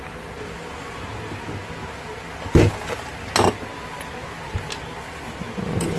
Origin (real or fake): real